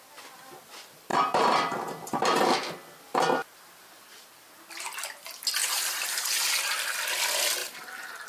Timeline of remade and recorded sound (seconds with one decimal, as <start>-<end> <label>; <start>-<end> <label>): 0.0-5.6 recorded; 5.6-6.6 remade; 6.6-7.6 recorded; 7.6-8.3 remade